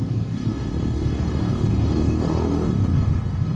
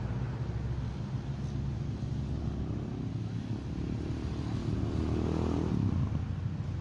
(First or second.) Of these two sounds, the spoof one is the first